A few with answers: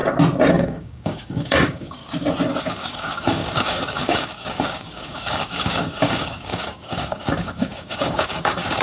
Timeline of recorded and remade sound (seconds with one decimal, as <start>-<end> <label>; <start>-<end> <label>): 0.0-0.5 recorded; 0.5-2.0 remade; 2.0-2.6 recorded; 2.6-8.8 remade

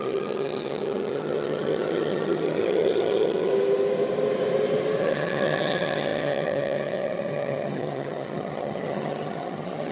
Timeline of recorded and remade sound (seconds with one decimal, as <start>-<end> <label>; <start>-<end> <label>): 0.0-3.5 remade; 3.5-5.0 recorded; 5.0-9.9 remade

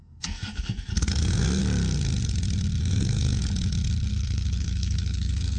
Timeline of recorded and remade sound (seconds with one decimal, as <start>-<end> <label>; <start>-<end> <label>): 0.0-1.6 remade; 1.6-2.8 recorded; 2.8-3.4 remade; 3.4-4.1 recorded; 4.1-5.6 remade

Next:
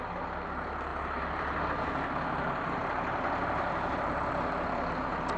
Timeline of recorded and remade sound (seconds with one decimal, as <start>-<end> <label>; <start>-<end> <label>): 0.0-0.9 recorded; 0.9-1.6 remade; 1.6-2.8 recorded; 2.8-4.1 remade; 4.1-5.4 recorded

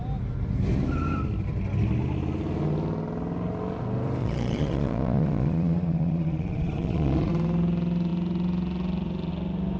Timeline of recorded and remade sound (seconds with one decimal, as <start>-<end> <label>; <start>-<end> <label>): 0.0-4.2 recorded; 4.2-7.3 remade; 7.3-9.8 recorded